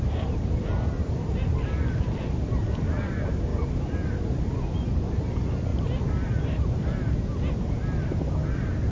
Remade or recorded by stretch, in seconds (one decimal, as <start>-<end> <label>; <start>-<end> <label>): 0.0-8.9 recorded